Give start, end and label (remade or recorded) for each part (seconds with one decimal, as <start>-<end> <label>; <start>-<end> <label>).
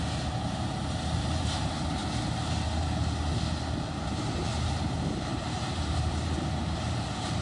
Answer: 0.0-2.0 remade; 2.0-4.2 recorded; 4.2-7.4 remade